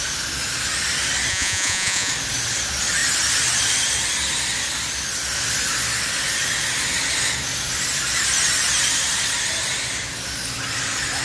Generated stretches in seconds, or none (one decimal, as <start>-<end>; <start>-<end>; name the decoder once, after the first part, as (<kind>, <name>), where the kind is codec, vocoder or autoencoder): 1.3-2.1 (vocoder, Vocos)